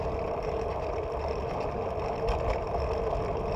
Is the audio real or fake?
real